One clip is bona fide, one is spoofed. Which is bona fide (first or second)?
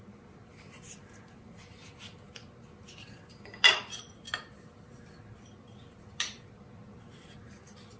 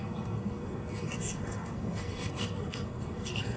first